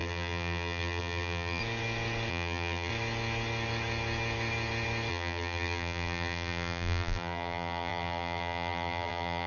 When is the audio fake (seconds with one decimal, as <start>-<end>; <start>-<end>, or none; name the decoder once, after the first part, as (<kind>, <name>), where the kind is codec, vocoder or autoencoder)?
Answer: 0.0-1.6 (vocoder, BigVGAN v2); 2.3-2.9; 5.1-9.5